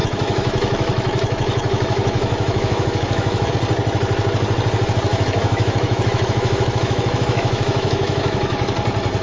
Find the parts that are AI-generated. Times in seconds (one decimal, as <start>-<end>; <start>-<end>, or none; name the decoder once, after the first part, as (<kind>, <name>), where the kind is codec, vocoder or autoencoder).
0.0-3.5 (autoencoder, DAC-VAE); 5.1-8.7